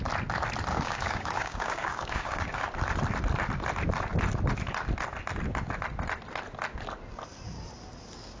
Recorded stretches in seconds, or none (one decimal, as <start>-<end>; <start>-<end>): 0.0-0.7; 2.6-8.4